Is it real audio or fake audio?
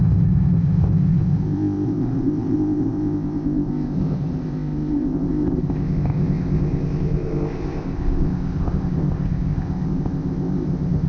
fake